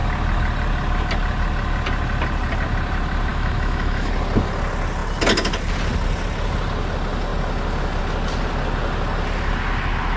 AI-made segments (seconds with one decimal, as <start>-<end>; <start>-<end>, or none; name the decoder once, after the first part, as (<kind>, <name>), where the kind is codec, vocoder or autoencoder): 3.3-4.1 (autoencoder, DAC-VAE)